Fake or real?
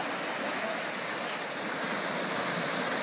real